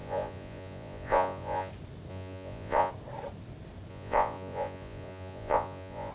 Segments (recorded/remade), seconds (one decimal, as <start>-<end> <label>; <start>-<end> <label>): 0.0-1.7 remade; 1.7-2.1 recorded; 2.1-2.9 remade; 2.9-3.9 recorded; 3.9-6.1 remade